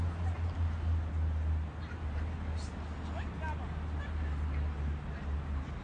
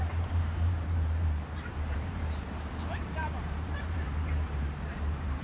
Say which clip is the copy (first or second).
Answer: second